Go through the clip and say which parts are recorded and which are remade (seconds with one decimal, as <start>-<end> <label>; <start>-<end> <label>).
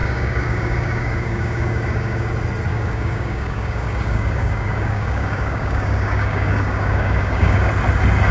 0.0-2.3 remade; 2.3-2.7 recorded; 2.7-7.7 remade; 7.7-8.3 recorded